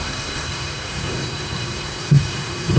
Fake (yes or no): yes